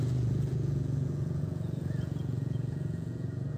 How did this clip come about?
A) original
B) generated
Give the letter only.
B